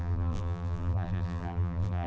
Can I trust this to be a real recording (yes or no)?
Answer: no